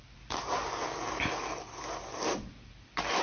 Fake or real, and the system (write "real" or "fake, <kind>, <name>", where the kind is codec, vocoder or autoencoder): fake, vocoder, BigVGAN v2